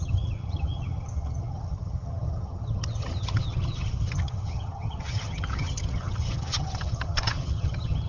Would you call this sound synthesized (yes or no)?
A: yes